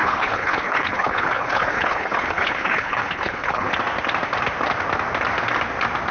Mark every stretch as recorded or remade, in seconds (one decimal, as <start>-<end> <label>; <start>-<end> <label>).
0.0-3.7 remade; 3.7-6.1 recorded